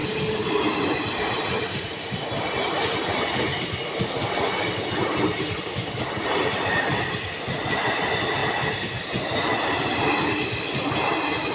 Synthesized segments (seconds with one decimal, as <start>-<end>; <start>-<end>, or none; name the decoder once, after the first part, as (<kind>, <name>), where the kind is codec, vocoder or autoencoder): none